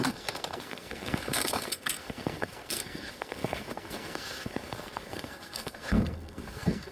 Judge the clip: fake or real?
fake